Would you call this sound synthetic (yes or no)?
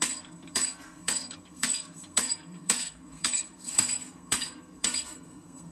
yes